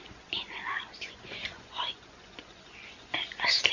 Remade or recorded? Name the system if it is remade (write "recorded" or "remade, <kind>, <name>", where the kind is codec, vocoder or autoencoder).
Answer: remade, vocoder, Vocos